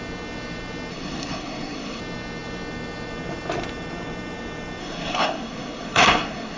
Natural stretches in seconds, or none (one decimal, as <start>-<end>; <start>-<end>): 0.0-0.9; 2.0-4.8